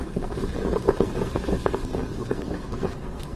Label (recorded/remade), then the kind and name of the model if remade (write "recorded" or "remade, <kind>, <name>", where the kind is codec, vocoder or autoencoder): remade, codec, SNAC